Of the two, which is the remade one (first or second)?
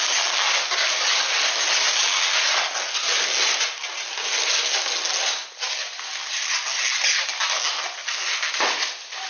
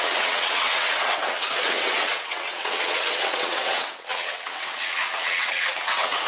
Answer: second